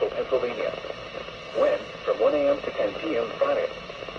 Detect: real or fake real